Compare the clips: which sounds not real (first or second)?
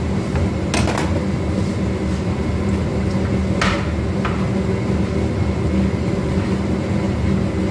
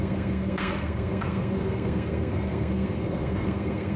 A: second